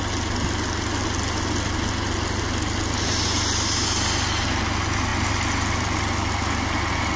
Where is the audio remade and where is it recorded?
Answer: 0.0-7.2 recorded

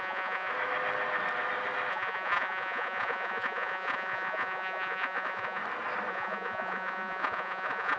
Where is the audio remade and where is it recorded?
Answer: 0.0-0.5 remade; 0.5-1.9 recorded; 1.9-5.6 remade; 5.6-6.1 recorded; 6.1-8.0 remade

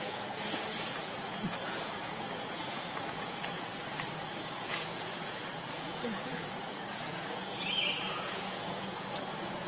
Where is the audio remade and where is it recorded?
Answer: 0.0-3.7 remade; 3.7-4.4 recorded; 4.4-9.7 remade